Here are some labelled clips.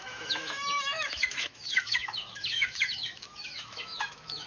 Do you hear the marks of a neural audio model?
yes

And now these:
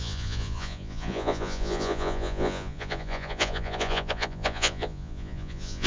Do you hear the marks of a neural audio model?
yes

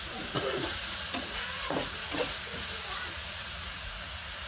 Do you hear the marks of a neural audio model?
yes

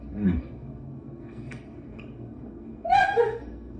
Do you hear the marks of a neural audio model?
yes